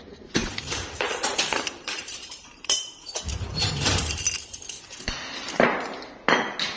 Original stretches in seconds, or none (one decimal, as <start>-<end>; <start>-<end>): 0.0-0.4; 3.7-6.8